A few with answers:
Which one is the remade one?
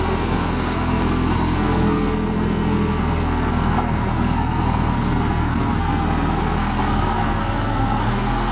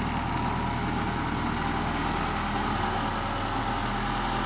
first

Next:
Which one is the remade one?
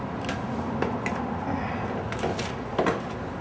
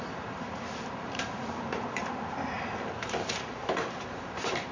second